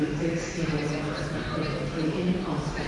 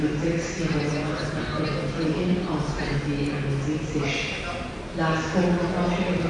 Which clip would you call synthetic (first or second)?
first